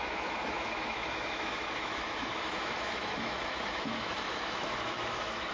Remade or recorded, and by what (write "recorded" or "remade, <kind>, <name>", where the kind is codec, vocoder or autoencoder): remade, autoencoder, DAC-VAE